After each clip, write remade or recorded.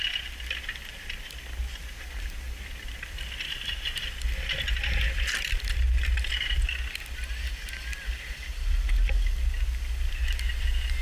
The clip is recorded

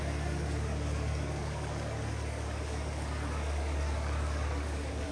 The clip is remade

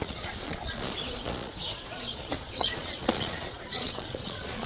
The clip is remade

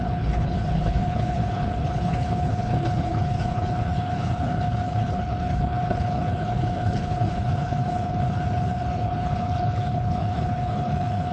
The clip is remade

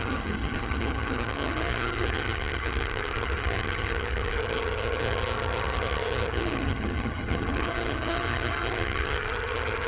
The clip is remade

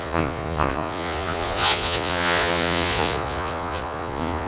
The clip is remade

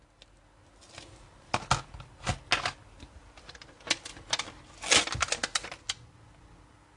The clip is recorded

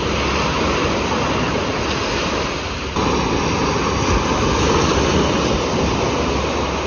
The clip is recorded